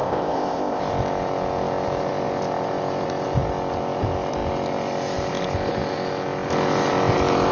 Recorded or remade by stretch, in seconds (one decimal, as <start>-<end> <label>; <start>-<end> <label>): 0.0-0.8 remade; 0.8-7.5 recorded